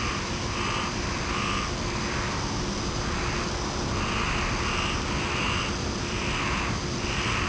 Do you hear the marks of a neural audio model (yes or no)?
no